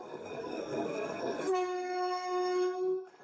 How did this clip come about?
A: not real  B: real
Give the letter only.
A